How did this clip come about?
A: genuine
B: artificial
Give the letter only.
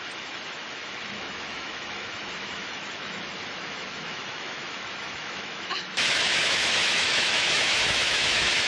B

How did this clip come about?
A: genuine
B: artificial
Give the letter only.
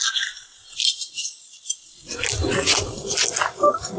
A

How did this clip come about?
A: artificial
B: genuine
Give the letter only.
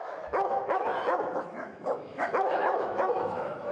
A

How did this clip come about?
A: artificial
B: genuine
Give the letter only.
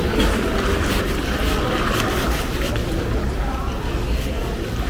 B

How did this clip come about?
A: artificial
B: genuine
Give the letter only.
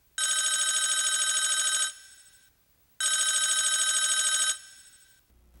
B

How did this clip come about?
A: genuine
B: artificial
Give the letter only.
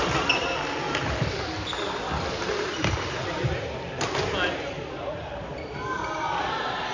A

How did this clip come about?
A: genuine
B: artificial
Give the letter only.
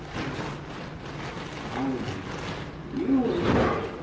A